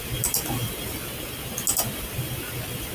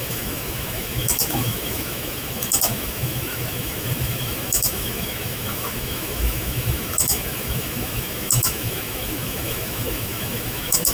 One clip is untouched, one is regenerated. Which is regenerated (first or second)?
second